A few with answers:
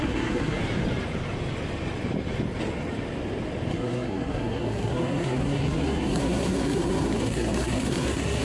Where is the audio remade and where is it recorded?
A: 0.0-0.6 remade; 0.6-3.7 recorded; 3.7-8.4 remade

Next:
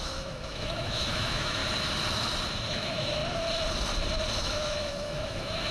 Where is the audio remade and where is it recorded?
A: 0.0-1.6 remade; 1.6-2.7 recorded; 2.7-3.2 remade; 3.2-4.4 recorded; 4.4-5.7 remade

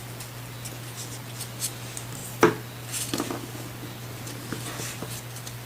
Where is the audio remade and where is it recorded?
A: 0.0-5.7 recorded